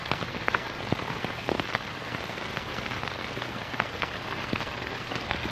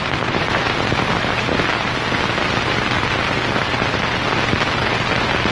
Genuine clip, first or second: second